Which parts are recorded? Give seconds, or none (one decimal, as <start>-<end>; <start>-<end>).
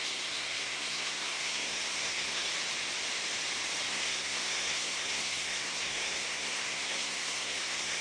2.5-3.9